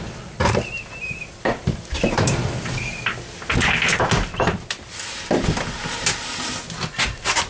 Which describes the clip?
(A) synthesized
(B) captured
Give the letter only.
B